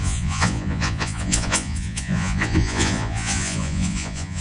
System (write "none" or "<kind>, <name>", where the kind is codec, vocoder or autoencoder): vocoder, Vocos